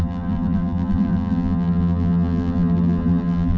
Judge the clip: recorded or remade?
remade